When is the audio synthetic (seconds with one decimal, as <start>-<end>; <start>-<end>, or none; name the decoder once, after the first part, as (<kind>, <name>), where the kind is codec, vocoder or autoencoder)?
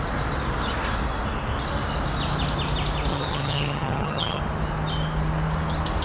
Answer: 3.1-4.4 (vocoder, HiFi-GAN)